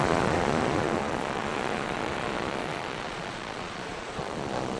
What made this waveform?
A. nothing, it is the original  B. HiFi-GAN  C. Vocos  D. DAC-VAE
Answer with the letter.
C